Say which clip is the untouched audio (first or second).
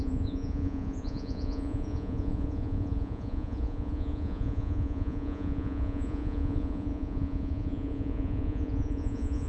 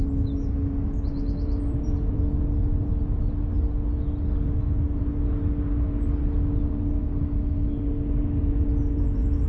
second